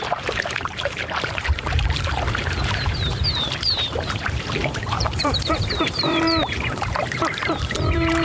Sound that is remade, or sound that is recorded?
remade